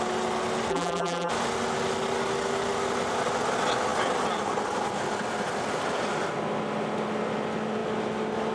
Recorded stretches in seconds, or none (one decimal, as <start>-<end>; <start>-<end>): 0.0-0.7; 1.3-8.5